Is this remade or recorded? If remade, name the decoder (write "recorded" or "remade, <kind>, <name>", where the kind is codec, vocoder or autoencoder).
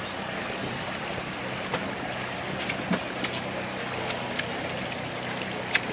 recorded